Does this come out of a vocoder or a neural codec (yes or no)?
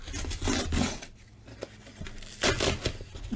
no